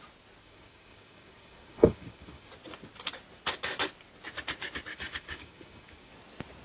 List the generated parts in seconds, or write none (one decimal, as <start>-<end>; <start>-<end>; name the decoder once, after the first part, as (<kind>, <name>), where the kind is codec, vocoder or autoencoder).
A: 0.4-2.5 (codec, DAC); 4.9-6.1